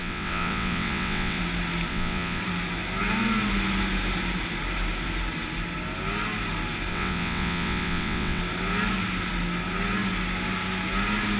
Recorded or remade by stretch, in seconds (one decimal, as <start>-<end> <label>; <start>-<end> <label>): 0.0-1.4 remade; 1.4-1.9 recorded; 1.9-2.4 remade; 2.4-6.9 recorded; 6.9-8.4 remade; 8.4-11.4 recorded